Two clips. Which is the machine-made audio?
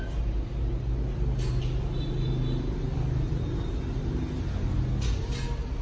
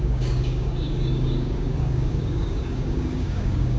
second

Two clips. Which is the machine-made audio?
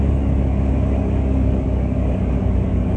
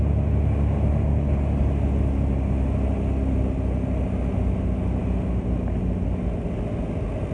first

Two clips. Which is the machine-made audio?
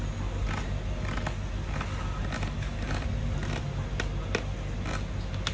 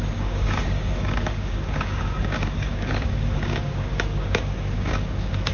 second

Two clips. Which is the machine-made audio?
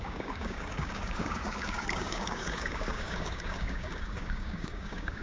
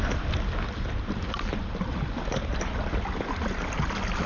first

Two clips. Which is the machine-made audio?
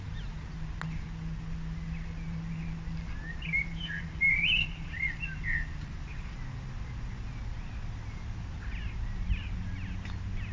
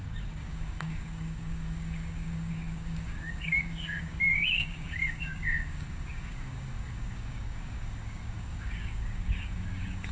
second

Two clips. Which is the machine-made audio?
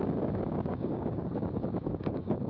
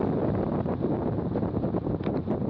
first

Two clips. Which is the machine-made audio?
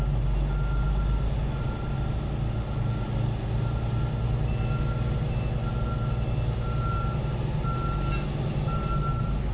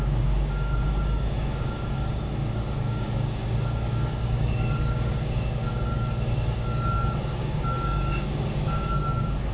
second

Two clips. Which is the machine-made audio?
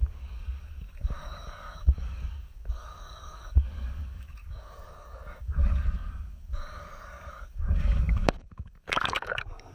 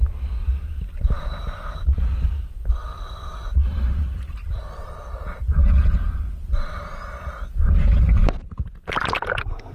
first